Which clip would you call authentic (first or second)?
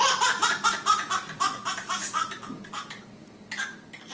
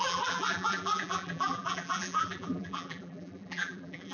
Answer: first